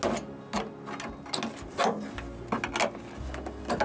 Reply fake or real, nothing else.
real